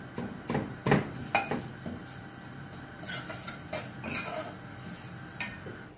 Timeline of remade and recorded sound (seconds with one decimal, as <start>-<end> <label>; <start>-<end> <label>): 0.0-6.0 recorded